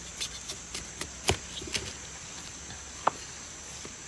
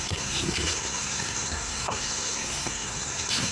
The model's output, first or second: second